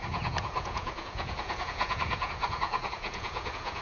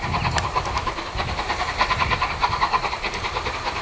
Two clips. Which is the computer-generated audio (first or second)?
first